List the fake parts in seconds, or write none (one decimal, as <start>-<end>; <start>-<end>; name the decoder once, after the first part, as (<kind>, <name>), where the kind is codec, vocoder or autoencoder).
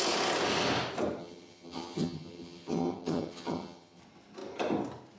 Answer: 1.2-4.0 (vocoder, HiFi-GAN)